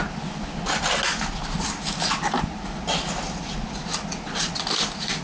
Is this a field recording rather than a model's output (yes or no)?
yes